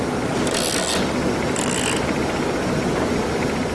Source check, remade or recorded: recorded